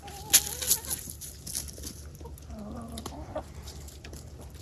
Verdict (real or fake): real